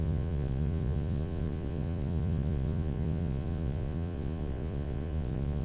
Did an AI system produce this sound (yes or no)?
yes